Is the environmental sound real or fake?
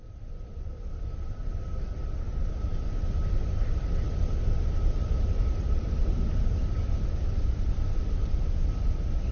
real